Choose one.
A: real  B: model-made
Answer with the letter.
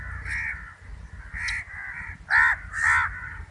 A